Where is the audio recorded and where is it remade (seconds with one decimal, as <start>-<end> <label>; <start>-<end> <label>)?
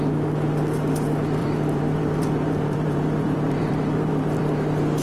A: 0.0-1.4 recorded; 1.4-4.4 remade; 4.4-5.0 recorded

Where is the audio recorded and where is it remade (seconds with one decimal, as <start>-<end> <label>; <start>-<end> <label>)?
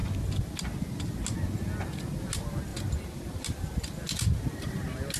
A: 0.0-5.2 recorded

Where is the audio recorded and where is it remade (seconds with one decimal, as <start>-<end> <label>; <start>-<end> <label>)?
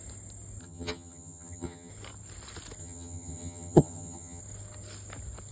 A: 0.0-0.6 recorded; 0.6-1.9 remade; 1.9-2.8 recorded; 2.8-4.4 remade; 4.4-5.5 recorded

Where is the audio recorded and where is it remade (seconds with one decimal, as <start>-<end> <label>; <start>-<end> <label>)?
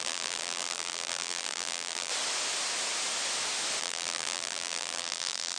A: 0.0-2.1 remade; 2.1-3.8 recorded; 3.8-5.6 remade